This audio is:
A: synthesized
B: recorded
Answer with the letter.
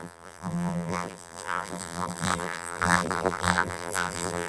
A